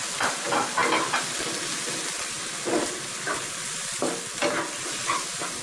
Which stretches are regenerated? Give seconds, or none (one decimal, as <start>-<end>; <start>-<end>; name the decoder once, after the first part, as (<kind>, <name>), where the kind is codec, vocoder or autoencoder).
none